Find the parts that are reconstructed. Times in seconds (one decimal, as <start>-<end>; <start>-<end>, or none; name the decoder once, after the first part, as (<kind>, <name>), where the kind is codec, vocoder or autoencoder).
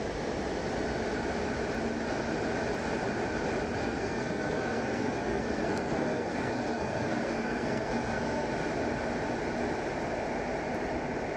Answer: 3.8-8.5 (codec, SNAC)